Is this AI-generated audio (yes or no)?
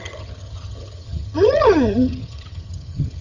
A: yes